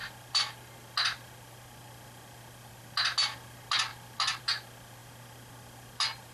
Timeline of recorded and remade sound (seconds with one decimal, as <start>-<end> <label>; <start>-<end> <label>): 0.0-6.3 recorded